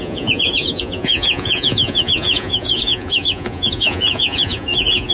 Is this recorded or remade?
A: remade